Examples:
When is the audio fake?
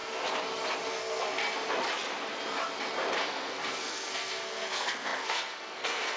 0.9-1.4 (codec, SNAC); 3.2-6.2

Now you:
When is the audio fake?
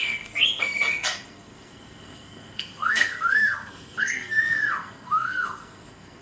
0.0-6.2 (codec, SNAC)